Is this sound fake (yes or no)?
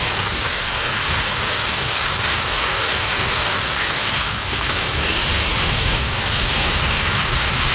yes